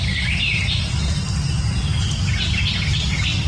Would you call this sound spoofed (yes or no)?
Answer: no